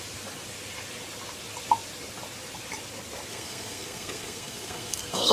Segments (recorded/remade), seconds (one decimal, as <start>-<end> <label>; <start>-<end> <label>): 0.0-3.3 recorded; 3.3-5.3 remade